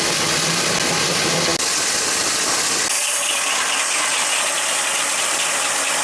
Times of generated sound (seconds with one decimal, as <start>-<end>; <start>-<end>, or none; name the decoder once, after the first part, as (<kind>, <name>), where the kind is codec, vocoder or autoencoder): 4.1-5.3 (vocoder, BigVGAN v2)